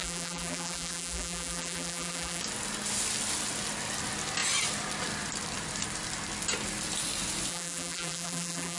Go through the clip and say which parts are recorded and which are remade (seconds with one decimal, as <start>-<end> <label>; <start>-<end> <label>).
0.0-2.4 remade; 2.4-7.5 recorded; 7.5-8.8 remade